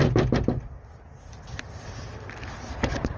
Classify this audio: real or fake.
real